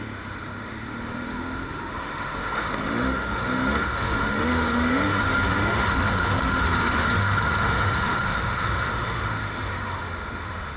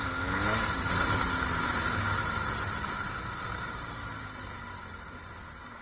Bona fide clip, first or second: second